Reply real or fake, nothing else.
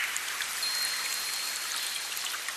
fake